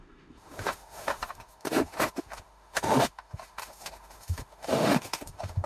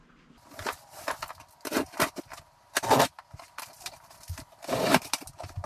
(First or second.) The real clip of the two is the second